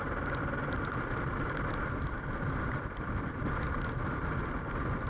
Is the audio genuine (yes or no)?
yes